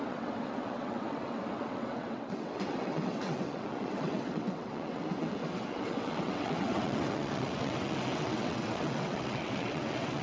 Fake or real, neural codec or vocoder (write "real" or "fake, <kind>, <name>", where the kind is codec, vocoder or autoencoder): fake, vocoder, WaveNeXt